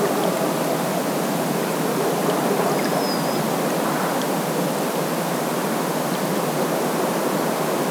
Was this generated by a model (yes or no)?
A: no